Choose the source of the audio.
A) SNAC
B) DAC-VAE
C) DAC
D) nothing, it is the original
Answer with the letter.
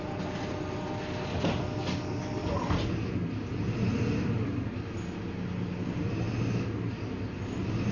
D